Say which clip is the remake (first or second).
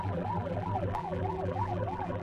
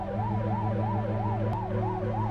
first